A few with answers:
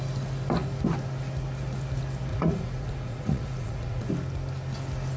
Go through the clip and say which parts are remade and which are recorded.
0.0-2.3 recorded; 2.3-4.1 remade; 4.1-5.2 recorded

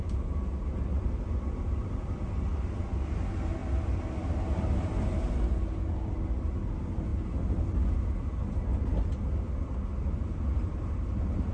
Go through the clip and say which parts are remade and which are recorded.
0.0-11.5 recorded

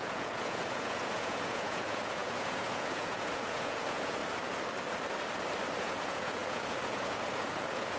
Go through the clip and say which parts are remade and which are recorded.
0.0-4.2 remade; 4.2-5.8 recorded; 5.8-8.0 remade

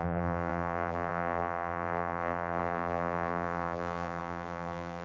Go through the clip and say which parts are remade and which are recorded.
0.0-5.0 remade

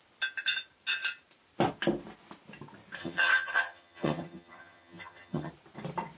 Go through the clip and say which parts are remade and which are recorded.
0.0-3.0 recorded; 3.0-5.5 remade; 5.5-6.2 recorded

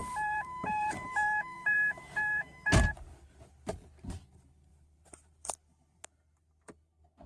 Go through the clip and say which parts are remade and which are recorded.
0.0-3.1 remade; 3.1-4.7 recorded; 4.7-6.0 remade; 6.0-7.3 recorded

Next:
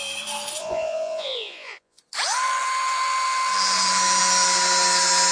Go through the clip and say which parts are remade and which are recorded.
0.0-0.6 recorded; 0.6-2.0 remade; 2.0-5.3 recorded